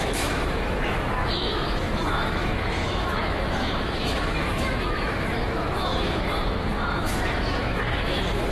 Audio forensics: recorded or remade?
remade